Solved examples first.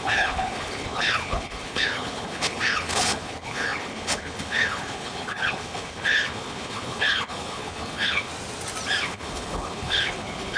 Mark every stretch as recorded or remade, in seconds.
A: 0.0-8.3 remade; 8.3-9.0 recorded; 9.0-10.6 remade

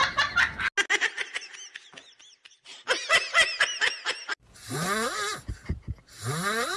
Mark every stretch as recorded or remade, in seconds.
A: 0.0-6.8 recorded

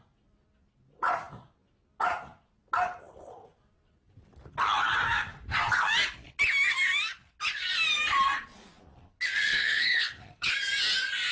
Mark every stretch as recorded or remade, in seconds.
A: 0.0-9.5 recorded; 9.5-10.5 remade; 10.5-11.3 recorded

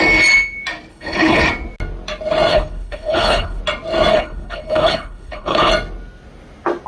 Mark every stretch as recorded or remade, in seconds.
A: 0.0-0.9 recorded; 0.9-1.4 remade; 1.4-2.5 recorded; 2.5-3.6 remade; 3.6-4.1 recorded; 4.1-5.7 remade; 5.7-6.9 recorded